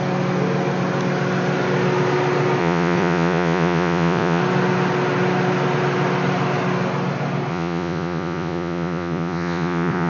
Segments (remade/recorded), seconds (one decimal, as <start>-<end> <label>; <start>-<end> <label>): 0.0-2.6 recorded; 2.6-4.4 remade; 4.4-7.5 recorded; 7.5-10.1 remade